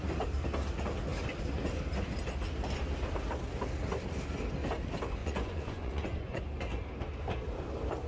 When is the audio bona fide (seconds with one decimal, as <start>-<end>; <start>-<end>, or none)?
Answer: 0.0-5.2; 6.4-8.1